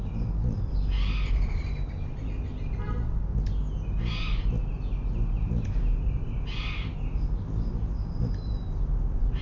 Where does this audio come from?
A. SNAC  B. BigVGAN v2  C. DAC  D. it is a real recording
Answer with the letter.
D